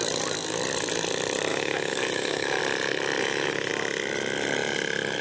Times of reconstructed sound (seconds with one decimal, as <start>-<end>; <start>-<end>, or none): 1.5-2.6; 3.2-3.7